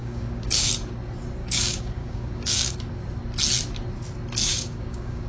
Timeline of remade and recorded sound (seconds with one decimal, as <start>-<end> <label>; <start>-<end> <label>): 0.0-0.7 remade; 0.7-1.4 recorded; 1.4-2.7 remade; 2.7-4.4 recorded; 4.4-5.3 remade